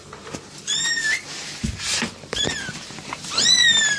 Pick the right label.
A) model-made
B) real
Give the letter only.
A